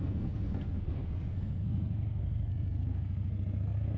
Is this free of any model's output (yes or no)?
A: no